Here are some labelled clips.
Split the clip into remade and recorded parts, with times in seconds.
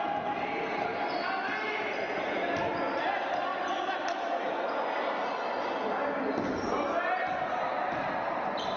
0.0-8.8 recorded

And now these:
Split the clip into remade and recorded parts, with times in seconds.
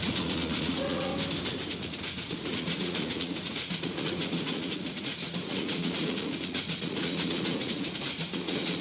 0.0-1.1 remade; 1.1-1.8 recorded; 1.8-8.8 remade